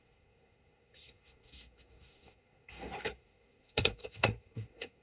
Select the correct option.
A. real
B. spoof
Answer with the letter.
B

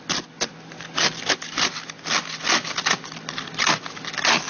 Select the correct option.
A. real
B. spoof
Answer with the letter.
A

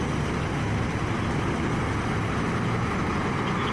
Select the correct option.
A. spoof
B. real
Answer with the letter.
B